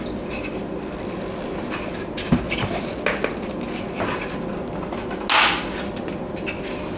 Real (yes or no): yes